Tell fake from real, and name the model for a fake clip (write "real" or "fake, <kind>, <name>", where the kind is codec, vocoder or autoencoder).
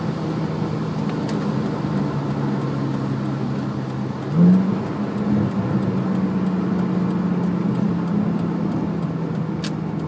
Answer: real